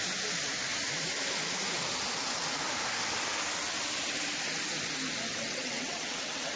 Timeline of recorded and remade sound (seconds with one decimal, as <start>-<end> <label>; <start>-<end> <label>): 0.0-5.3 recorded; 5.3-6.6 remade